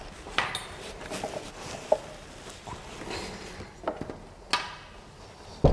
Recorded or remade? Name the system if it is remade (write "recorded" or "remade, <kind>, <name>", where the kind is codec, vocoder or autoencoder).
recorded